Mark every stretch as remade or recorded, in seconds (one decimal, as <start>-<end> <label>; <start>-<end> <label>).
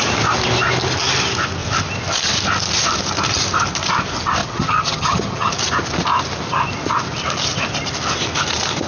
0.0-4.4 recorded; 4.4-5.5 remade; 5.5-8.9 recorded